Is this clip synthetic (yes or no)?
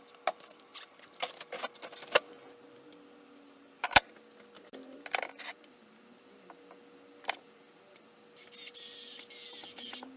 no